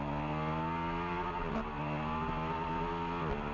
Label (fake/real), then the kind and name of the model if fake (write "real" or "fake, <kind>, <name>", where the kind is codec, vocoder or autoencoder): real